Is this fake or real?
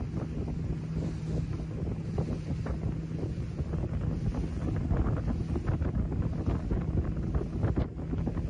real